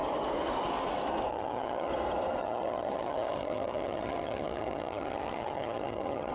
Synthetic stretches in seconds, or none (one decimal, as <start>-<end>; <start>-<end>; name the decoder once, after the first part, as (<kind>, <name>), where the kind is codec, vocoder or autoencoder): 1.3-1.9 (vocoder, HiFi-GAN); 2.4-6.3